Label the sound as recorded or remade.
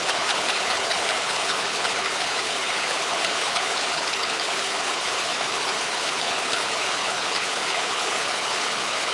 remade